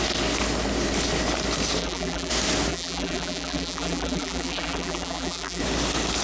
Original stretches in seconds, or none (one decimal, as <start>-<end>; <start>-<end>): 0.0-1.8; 2.3-2.7; 5.6-6.2